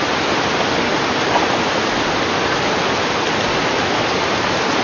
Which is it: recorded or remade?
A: recorded